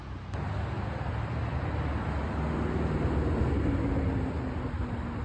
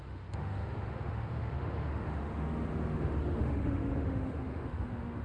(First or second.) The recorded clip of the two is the first